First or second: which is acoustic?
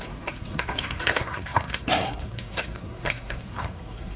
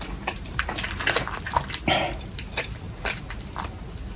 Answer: second